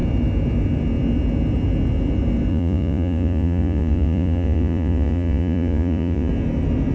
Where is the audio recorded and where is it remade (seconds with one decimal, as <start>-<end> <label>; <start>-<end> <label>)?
0.0-2.5 recorded; 2.5-6.3 remade; 6.3-6.9 recorded